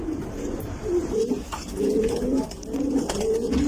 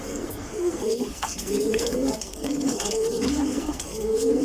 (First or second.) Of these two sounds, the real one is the first